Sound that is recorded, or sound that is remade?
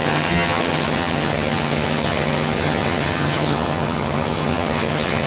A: remade